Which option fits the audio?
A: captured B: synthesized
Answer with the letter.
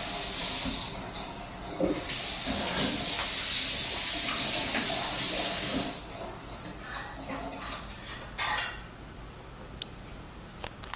A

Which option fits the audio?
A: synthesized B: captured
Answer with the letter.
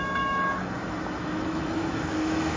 A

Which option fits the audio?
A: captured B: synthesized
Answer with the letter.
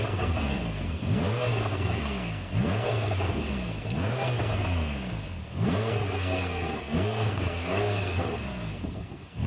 B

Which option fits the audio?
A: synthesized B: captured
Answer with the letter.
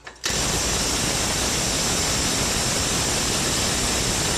B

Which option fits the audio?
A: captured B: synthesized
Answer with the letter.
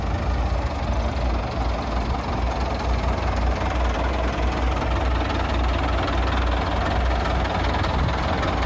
A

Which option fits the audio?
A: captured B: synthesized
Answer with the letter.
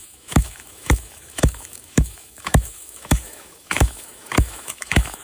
B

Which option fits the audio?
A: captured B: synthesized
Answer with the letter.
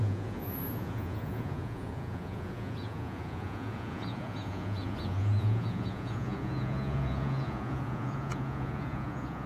B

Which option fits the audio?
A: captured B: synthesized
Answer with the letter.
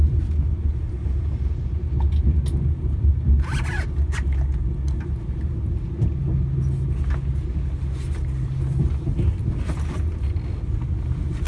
A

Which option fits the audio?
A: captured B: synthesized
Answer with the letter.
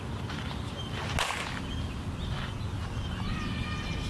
A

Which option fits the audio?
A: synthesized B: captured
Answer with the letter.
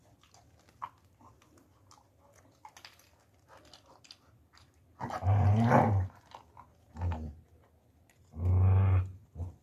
B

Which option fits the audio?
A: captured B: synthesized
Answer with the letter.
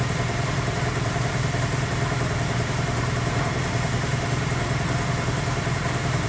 B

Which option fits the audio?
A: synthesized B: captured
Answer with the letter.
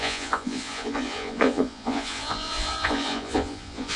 A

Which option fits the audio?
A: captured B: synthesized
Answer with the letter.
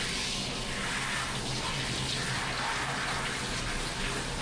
A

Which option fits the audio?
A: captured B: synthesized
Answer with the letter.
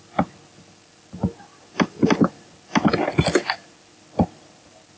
A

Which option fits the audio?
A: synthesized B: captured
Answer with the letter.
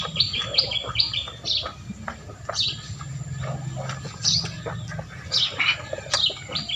A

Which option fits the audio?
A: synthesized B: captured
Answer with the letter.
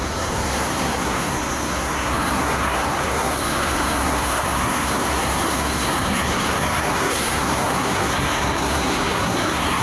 A